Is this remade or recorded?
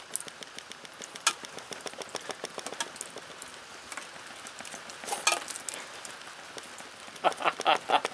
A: recorded